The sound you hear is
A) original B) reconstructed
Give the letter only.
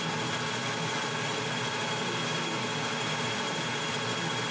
A